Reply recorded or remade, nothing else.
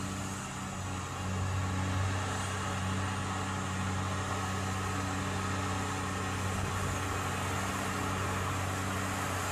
recorded